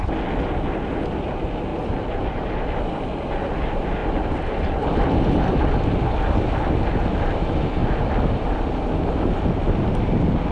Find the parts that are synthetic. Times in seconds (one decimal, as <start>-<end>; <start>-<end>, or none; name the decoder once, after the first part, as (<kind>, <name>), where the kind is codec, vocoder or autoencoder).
1.7-3.3 (vocoder, BigVGAN v2); 4.0-6.4